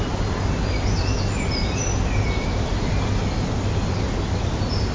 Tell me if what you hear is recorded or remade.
recorded